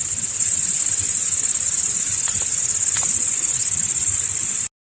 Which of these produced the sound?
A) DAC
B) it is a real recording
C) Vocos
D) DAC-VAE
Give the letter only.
B